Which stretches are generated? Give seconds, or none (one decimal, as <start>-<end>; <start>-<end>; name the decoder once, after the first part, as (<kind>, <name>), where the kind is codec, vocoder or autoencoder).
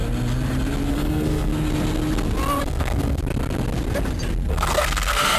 0.9-1.5 (codec, SNAC); 2.6-3.2; 4.5-5.4